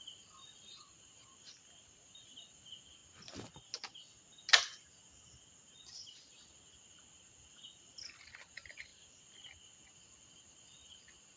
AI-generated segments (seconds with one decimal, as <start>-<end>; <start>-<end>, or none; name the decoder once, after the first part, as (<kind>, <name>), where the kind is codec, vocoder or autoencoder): 0.0-3.0 (vocoder, BigVGAN v2); 6.9-11.4